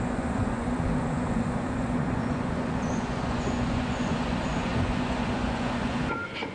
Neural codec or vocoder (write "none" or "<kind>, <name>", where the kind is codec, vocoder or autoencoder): vocoder, Vocos